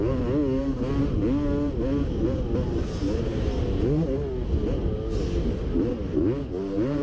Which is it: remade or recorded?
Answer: recorded